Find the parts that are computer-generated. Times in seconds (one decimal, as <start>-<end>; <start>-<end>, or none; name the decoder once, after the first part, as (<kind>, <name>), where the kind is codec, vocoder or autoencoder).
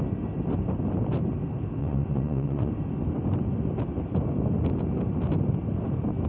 1.8-2.7 (vocoder, Vocos)